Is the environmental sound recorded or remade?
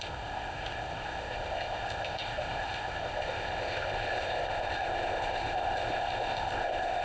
remade